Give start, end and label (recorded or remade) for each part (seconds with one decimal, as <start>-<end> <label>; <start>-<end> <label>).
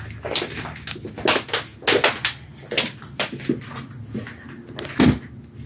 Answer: 0.0-5.7 recorded